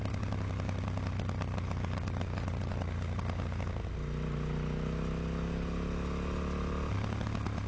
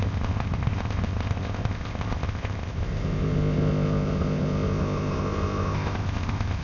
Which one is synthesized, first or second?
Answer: second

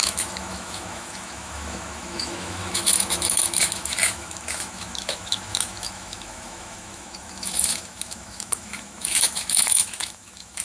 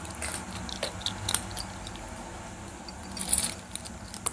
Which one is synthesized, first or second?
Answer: first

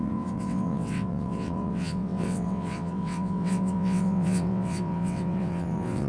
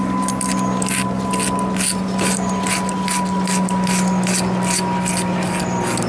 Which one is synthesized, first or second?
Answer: first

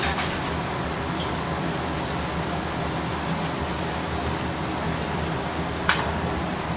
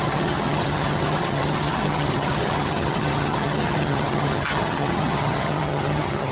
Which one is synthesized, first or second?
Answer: second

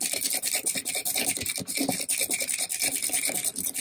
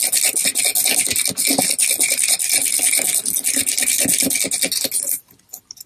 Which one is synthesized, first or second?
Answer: first